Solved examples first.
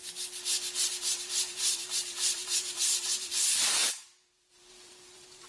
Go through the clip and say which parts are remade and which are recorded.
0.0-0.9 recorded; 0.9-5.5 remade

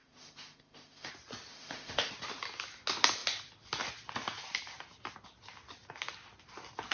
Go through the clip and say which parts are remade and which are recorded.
0.0-1.1 remade; 1.1-1.5 recorded; 1.5-2.1 remade; 2.1-6.9 recorded